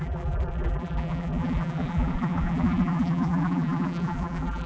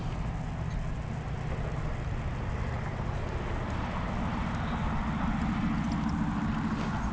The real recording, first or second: second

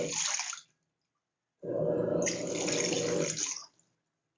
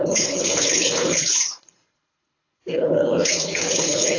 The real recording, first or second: first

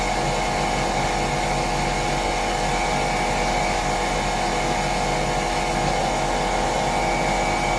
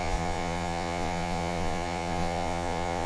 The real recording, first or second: first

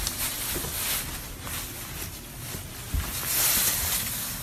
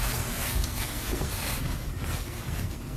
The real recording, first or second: first